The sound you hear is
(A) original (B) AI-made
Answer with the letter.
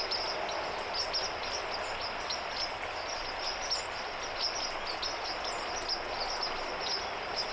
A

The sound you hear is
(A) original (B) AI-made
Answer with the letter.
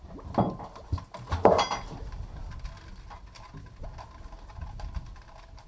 A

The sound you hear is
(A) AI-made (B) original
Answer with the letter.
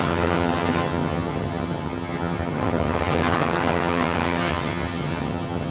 A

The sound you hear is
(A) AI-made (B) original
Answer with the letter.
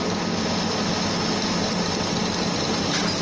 B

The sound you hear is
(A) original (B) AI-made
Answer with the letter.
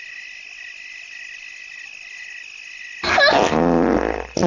A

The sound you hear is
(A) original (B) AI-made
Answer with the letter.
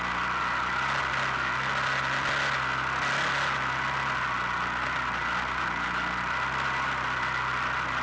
A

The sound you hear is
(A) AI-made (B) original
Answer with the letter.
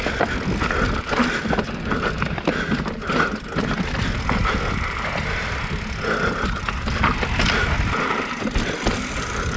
B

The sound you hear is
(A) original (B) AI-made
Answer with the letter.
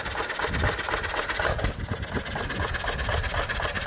A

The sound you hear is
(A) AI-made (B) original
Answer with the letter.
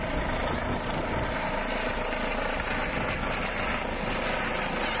B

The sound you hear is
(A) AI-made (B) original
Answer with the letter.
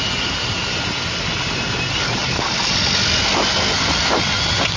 B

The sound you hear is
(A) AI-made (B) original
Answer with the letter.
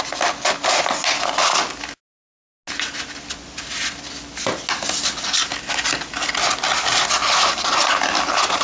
B